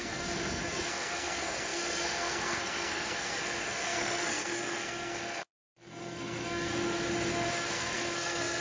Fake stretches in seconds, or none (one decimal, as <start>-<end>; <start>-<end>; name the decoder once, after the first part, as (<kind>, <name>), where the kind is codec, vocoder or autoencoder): 0.0-6.7 (codec, SNAC); 7.7-8.6